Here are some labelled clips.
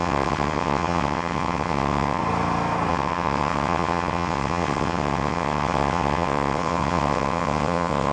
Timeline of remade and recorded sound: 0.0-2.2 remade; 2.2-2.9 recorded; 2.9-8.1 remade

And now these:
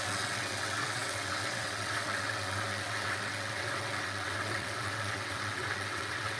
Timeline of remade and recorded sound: 0.0-6.4 remade

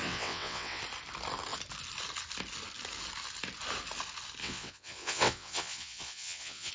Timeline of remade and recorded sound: 0.0-0.8 remade; 0.8-4.4 recorded; 4.4-6.7 remade

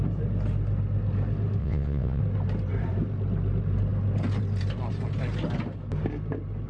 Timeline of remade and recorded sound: 0.0-1.6 recorded; 1.6-2.2 remade; 2.2-6.7 recorded

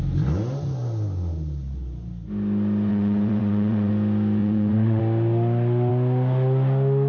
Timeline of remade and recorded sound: 0.0-2.9 recorded; 2.9-3.9 remade; 3.9-4.4 recorded; 4.4-5.0 remade; 5.0-7.1 recorded

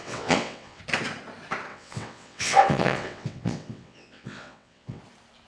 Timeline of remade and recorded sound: 0.0-0.8 remade; 0.8-1.7 recorded; 1.7-5.0 remade; 5.0-5.5 recorded